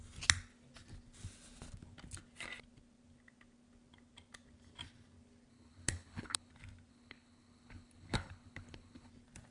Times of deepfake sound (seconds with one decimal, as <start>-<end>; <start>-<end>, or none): 5.5-6.5; 6.9-9.1